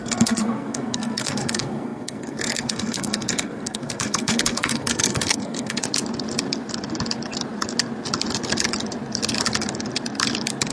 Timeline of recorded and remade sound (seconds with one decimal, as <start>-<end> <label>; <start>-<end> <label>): 0.0-5.8 remade; 5.8-10.7 recorded